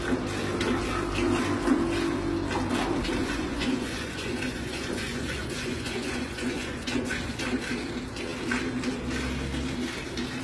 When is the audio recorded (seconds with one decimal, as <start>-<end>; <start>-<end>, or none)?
0.0-3.2; 7.3-10.4